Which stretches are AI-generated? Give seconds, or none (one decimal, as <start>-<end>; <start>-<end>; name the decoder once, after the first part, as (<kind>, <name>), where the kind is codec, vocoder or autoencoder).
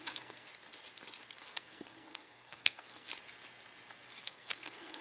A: 0.0-0.5 (codec, SNAC); 1.4-3.1; 4.2-5.0